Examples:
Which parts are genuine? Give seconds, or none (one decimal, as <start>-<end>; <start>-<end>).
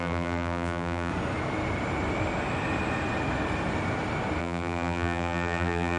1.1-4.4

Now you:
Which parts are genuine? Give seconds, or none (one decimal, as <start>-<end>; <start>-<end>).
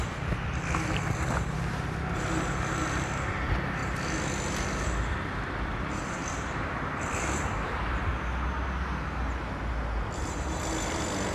3.8-4.8; 8.1-10.2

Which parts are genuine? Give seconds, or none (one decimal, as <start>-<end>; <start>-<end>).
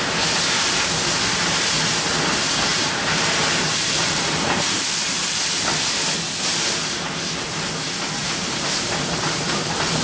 0.0-2.7; 5.4-8.2